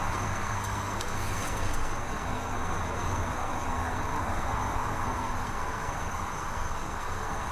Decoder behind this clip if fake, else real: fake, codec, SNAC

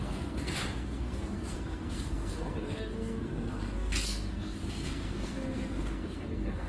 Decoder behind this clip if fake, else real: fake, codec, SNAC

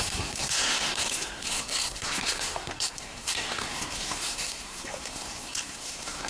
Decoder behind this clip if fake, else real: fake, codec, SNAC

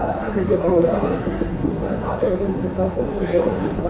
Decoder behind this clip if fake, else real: fake, codec, SNAC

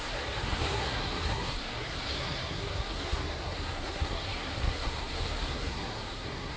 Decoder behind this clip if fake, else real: fake, codec, SNAC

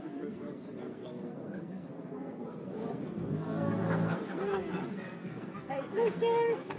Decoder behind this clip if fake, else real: fake, codec, SNAC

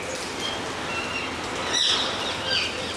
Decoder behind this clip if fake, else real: real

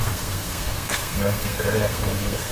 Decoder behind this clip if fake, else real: fake, codec, SNAC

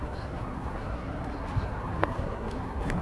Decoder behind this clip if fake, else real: fake, codec, SNAC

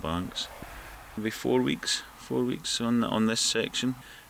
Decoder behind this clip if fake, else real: real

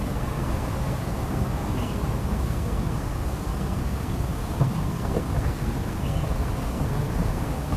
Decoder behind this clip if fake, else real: fake, codec, SNAC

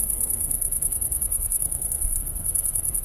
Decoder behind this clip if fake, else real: fake, codec, SNAC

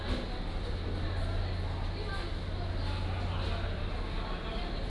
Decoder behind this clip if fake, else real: real